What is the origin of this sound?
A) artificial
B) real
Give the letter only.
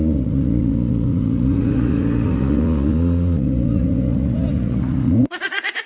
A